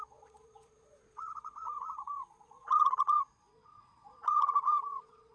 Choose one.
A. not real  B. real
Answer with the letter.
A